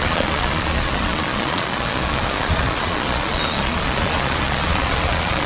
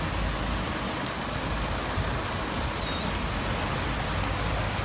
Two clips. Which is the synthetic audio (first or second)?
first